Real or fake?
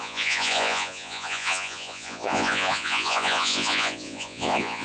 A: fake